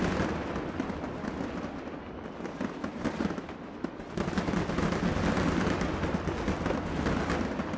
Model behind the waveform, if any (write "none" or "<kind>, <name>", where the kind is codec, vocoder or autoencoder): none